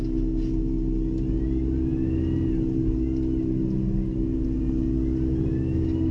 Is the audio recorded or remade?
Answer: recorded